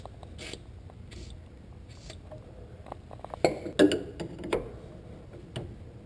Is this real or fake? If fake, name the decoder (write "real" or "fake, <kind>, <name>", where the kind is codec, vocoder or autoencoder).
real